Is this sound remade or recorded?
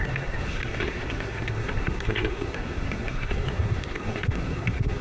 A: remade